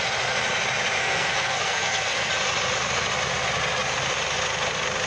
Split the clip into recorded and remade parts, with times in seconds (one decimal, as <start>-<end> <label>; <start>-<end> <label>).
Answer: 0.0-1.0 recorded; 1.0-2.3 remade; 2.3-5.1 recorded